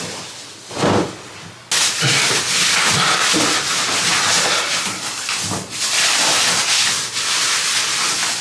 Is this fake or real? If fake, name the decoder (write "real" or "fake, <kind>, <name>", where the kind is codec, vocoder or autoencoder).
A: real